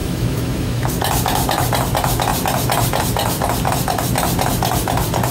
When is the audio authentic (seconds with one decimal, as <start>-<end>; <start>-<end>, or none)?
0.9-5.3